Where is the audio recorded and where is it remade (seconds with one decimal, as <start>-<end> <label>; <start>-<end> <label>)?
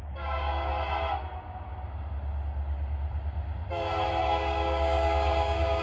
0.0-0.7 remade; 0.7-4.2 recorded; 4.2-5.8 remade